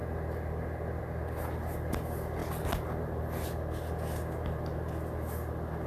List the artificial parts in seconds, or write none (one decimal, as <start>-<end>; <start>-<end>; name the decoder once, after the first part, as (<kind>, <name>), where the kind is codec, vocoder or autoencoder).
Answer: none

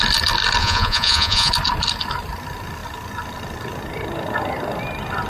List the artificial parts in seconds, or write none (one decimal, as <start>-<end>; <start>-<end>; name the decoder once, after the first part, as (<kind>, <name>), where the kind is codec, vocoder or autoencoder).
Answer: 0.6-1.5 (vocoder, Vocos)

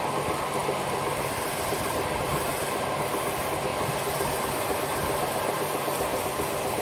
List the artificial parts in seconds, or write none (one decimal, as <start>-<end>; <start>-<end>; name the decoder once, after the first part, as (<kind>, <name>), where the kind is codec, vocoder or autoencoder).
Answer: none

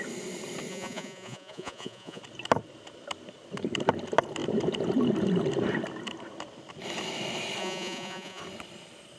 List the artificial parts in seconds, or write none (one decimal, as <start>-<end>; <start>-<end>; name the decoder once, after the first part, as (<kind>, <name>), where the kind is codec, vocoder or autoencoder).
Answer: 0.7-2.2 (vocoder, Vocos); 7.6-8.4